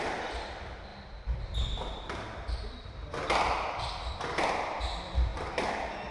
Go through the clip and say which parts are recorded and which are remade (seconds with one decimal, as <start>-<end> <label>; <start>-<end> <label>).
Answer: 0.0-6.1 recorded